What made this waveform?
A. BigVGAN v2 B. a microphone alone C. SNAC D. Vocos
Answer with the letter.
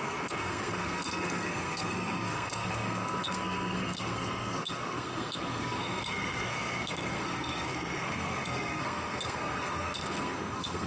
C